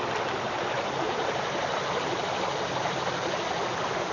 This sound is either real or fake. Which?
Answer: real